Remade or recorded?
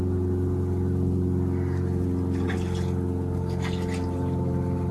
recorded